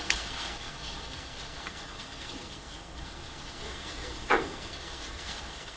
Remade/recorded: remade